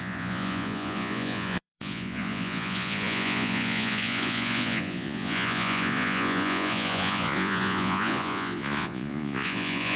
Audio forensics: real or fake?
fake